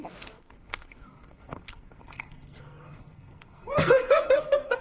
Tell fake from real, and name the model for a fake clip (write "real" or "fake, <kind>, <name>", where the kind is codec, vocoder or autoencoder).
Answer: fake, codec, SNAC